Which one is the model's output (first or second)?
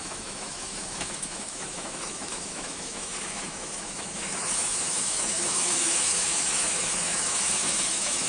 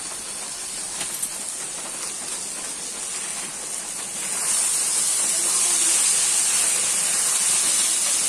first